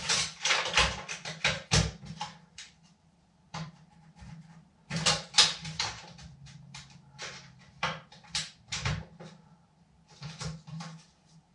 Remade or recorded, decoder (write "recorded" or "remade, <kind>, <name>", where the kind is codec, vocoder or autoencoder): remade, vocoder, BigVGAN v2